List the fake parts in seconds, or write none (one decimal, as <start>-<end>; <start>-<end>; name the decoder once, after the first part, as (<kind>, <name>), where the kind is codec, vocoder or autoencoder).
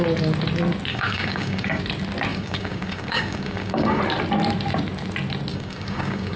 0.9-1.8 (codec, DAC); 2.3-4.0; 5.5-6.4